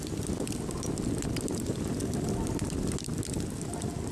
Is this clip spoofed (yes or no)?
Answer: no